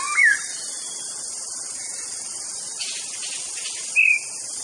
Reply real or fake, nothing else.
real